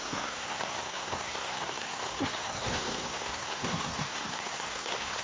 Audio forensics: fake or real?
fake